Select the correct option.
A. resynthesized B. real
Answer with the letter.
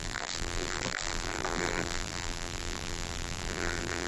A